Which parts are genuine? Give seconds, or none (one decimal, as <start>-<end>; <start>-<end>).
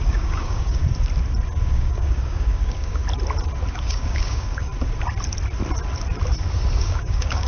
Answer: 0.8-1.6; 3.0-3.8; 4.7-6.8